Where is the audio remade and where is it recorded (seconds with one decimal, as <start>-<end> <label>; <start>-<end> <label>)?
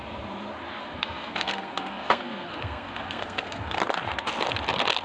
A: 0.0-0.8 recorded; 0.8-3.8 remade; 3.8-5.0 recorded